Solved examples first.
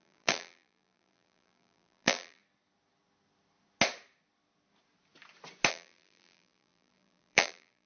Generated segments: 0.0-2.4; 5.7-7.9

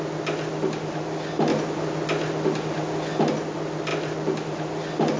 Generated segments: 0.0-1.5; 3.2-5.2

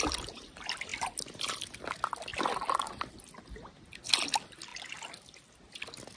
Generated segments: 0.9-1.4; 2.3-2.9; 4.7-5.5

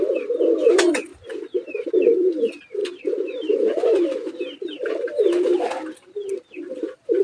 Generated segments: 0.0-1.1; 2.0-5.5; 6.3-7.2

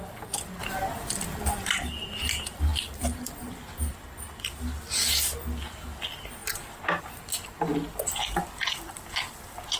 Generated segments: 0.6-1.7; 2.7-3.9

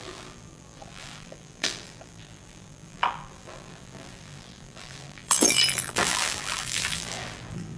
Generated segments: 0.0-7.8